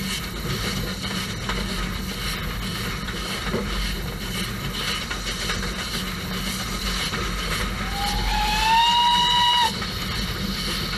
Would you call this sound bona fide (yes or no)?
yes